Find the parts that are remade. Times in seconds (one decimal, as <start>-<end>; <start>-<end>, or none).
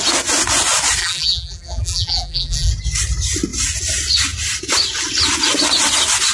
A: 1.0-2.7